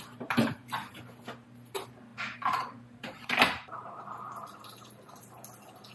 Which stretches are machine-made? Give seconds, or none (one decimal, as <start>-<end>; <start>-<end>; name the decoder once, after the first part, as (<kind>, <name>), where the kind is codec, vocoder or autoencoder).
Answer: 0.0-0.6 (vocoder, BigVGAN v2); 1.3-5.9